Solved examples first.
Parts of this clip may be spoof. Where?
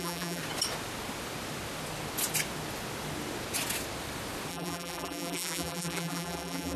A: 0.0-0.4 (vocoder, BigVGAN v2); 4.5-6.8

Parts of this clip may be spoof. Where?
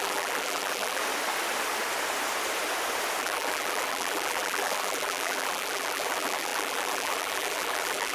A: 0.0-1.0 (vocoder, BigVGAN v2); 3.2-8.1